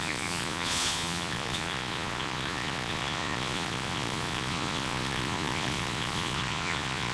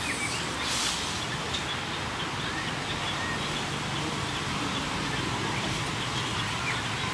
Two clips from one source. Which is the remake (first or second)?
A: first